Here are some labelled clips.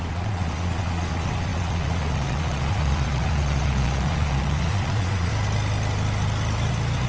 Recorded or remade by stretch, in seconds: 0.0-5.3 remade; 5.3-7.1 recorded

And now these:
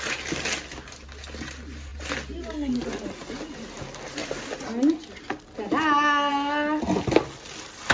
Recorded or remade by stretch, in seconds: 0.0-7.9 recorded

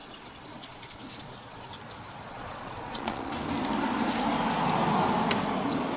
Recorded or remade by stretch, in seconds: 0.0-1.7 remade; 1.7-2.3 recorded; 2.3-3.3 remade; 3.3-6.0 recorded

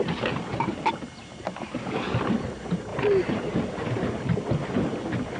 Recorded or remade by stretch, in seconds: 0.0-0.5 recorded; 0.5-1.0 remade; 1.0-2.9 recorded; 2.9-3.5 remade; 3.5-5.4 recorded